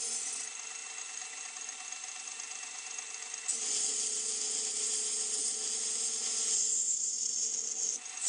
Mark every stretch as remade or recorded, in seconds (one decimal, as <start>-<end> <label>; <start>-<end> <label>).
0.0-8.3 recorded